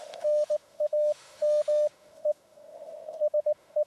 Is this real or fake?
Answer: fake